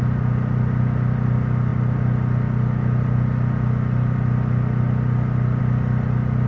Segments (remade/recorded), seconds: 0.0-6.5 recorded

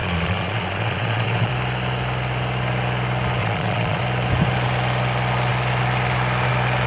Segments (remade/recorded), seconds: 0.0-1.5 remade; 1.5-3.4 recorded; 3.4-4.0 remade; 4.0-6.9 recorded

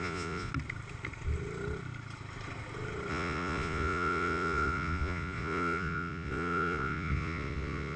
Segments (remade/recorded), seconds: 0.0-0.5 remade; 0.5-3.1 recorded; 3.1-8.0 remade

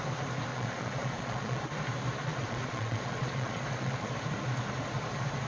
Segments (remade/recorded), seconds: 0.0-0.5 recorded; 0.5-1.6 remade; 1.6-2.2 recorded; 2.2-4.1 remade; 4.1-5.5 recorded

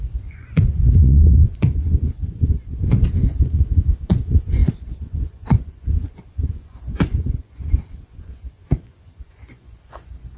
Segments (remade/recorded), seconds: 0.0-10.4 remade

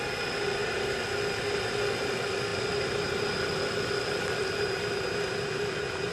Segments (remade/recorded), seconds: 0.0-6.1 recorded

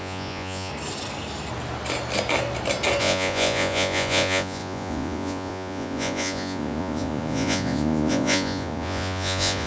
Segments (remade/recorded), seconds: 0.0-0.7 remade; 0.7-3.0 recorded; 3.0-9.7 remade